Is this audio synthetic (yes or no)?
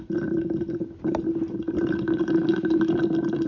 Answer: no